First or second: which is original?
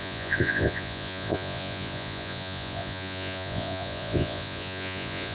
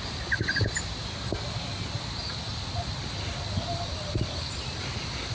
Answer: second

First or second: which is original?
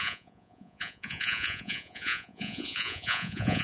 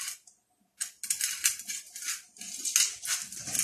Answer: second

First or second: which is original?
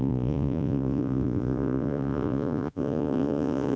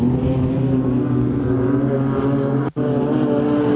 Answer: second